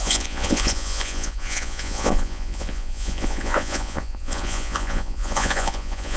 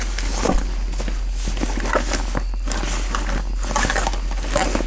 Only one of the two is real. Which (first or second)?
second